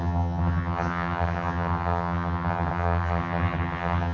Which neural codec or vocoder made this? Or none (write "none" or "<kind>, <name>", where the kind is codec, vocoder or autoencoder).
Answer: vocoder, HiFi-GAN